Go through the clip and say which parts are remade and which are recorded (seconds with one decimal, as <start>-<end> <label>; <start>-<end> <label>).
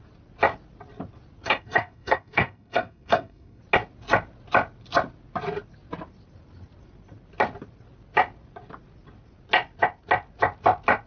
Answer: 0.0-1.4 recorded; 1.4-3.6 remade; 3.6-11.1 recorded